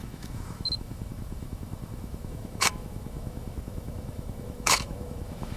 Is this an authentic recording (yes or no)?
no